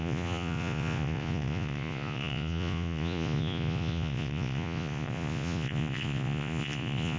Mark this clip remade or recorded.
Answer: remade